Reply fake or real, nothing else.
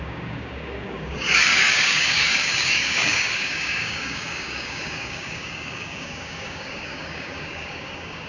fake